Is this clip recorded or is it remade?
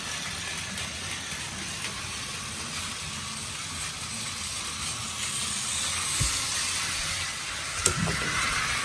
recorded